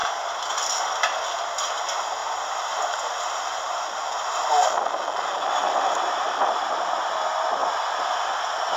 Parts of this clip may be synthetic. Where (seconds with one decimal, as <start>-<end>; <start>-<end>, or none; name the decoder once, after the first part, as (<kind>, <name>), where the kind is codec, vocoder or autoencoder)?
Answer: none